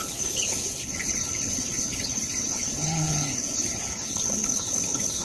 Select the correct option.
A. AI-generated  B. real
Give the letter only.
A